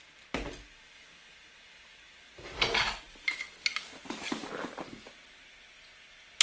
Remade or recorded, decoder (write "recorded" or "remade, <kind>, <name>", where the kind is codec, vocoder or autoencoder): recorded